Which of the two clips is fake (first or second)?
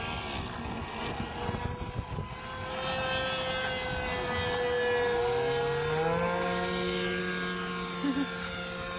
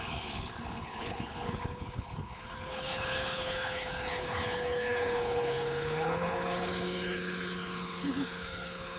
second